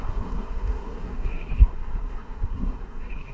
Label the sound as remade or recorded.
remade